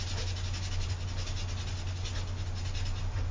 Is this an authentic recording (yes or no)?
yes